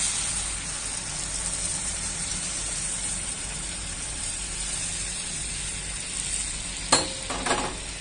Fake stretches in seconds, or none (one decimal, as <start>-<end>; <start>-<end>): 1.8-5.5